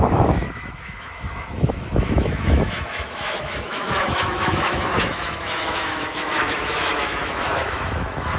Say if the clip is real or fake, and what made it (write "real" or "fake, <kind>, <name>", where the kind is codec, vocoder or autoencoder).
fake, autoencoder, DAC-VAE